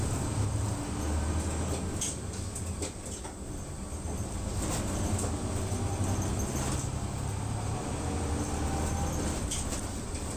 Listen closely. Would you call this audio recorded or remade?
recorded